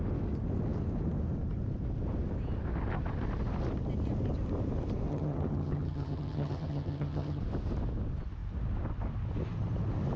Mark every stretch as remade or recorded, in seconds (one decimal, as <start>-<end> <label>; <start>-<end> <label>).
0.0-5.1 recorded; 5.1-7.4 remade; 7.4-10.2 recorded